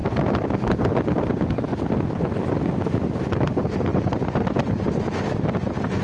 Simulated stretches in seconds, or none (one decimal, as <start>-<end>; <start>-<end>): 0.0-0.9; 3.9-5.0